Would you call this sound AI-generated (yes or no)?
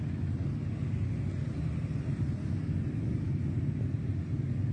no